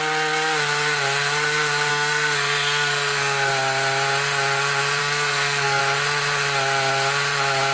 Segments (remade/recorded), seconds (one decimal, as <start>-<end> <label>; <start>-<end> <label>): 0.0-1.9 recorded; 1.9-3.5 remade; 3.5-5.0 recorded; 5.0-5.8 remade; 5.8-7.7 recorded